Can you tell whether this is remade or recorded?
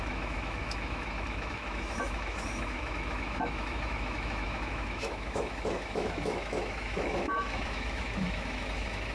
remade